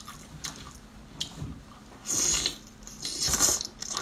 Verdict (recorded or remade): recorded